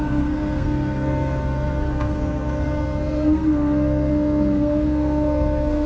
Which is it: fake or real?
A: fake